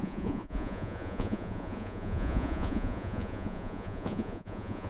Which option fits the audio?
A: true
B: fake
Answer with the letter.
B